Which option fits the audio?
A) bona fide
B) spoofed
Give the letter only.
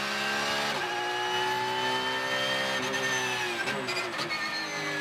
A